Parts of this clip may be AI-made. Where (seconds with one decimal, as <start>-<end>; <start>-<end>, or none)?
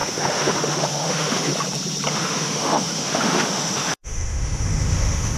0.0-1.5; 2.1-5.4